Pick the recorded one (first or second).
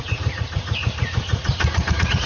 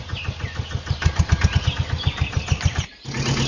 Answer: second